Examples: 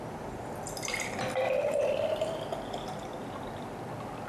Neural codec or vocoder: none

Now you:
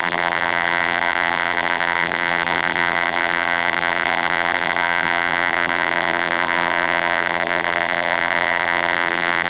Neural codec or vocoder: vocoder, BigVGAN v2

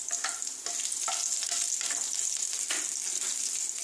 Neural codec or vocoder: none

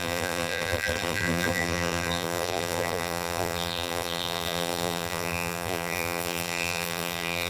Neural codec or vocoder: vocoder, BigVGAN v2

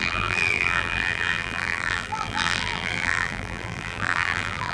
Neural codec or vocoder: vocoder, BigVGAN v2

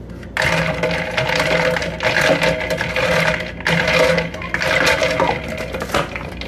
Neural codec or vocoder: none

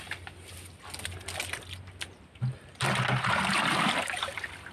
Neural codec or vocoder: none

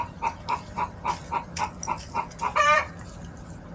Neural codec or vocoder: vocoder, BigVGAN v2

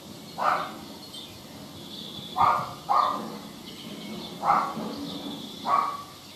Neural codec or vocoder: none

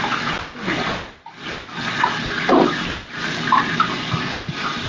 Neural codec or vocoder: none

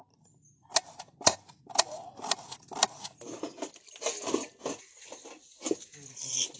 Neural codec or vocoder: none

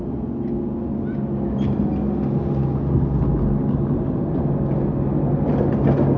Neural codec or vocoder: none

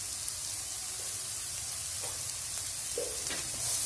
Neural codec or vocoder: none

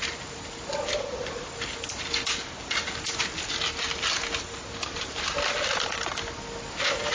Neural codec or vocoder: none